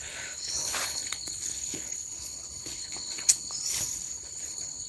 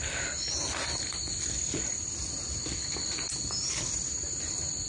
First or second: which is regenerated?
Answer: first